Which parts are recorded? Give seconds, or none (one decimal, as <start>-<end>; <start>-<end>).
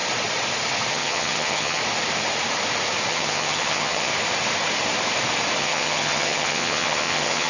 0.0-0.9; 1.8-3.1; 4.1-5.6